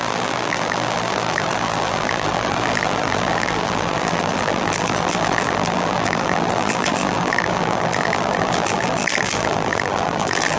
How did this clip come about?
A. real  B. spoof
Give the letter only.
B